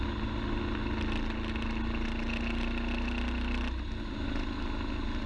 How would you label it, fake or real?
real